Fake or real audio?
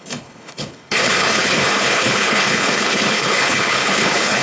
fake